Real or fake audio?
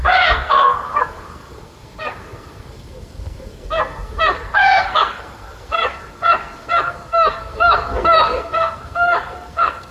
fake